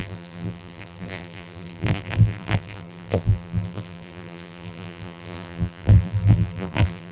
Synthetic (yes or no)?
yes